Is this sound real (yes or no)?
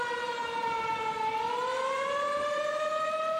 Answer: no